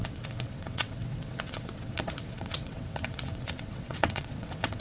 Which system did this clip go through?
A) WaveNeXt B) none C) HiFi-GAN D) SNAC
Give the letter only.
A